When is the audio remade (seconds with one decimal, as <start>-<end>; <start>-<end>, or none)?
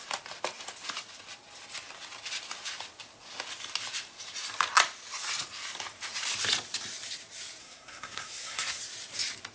7.6-8.8